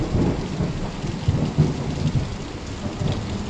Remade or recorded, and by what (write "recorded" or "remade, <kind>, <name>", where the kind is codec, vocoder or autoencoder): recorded